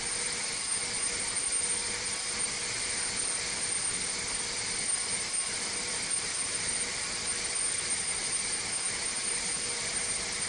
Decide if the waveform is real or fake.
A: fake